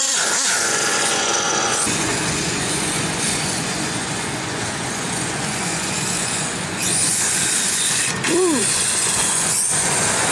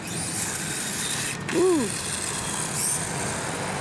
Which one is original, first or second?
second